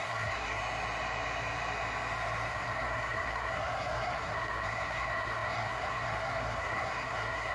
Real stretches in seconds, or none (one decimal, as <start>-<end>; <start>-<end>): 0.6-2.5